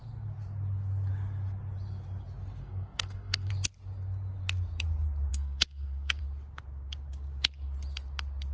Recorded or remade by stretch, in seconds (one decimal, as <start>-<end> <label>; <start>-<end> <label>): 0.0-2.6 recorded; 2.6-3.5 remade; 3.5-5.3 recorded; 5.3-6.2 remade; 6.2-8.5 recorded